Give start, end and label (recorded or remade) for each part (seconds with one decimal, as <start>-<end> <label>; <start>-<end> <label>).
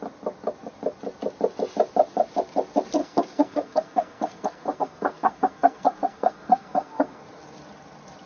0.0-3.0 recorded; 3.0-7.2 remade; 7.2-8.3 recorded